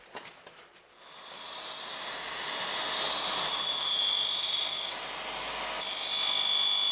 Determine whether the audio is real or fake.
real